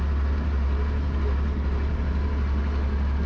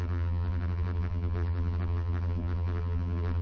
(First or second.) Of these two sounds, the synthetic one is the second